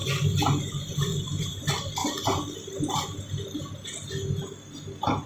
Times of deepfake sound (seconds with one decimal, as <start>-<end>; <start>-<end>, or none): 0.0-0.5; 1.1-1.6